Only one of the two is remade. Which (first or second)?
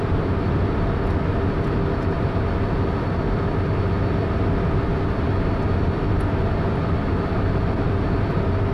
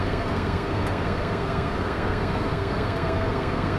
second